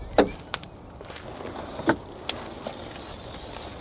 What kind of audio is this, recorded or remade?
recorded